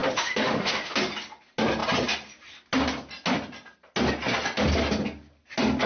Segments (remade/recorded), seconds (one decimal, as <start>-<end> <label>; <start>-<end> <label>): 0.0-1.0 remade; 1.0-5.9 recorded